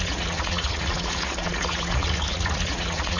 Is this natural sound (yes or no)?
no